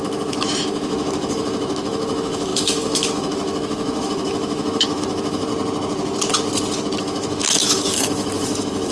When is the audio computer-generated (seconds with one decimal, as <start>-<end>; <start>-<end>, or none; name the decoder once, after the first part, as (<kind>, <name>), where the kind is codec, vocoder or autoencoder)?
0.0-5.5 (autoencoder, DAC-VAE); 7.0-8.9